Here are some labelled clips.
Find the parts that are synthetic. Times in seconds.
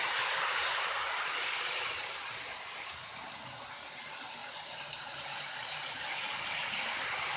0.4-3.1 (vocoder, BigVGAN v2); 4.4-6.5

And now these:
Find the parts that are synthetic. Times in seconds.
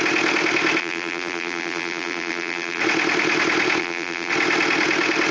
0.8-2.8 (vocoder, BigVGAN v2); 3.8-4.3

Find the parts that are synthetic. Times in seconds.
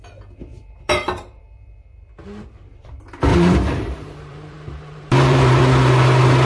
0.5-1.4 (vocoder, BigVGAN v2); 3.3-5.6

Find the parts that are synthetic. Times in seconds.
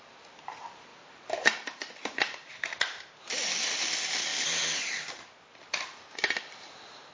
0.9-2.5 (vocoder, BigVGAN v2); 4.3-5.0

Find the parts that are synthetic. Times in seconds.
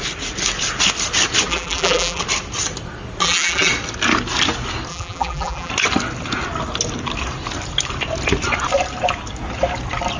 1.5-2.2 (vocoder, BigVGAN v2); 3.2-3.7; 4.9-5.7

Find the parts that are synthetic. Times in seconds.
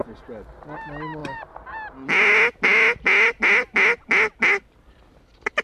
none